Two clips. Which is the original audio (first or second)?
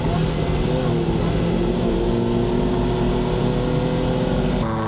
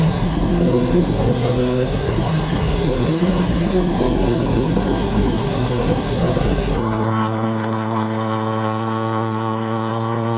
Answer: first